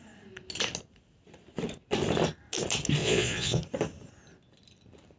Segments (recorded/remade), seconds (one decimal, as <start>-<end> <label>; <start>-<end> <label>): 0.0-3.0 recorded; 3.0-3.6 remade; 3.6-5.2 recorded